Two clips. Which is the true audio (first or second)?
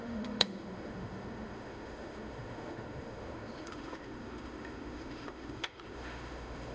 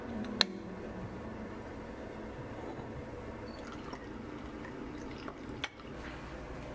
second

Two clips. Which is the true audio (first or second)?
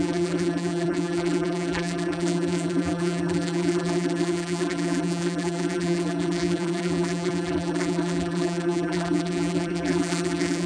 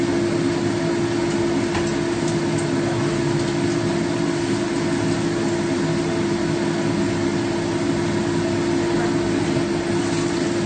second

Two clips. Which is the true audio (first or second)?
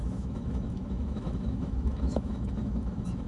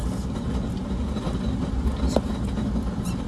second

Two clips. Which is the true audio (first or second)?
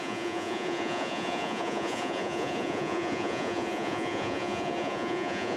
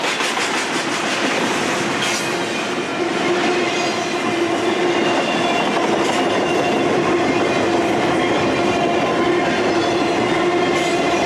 second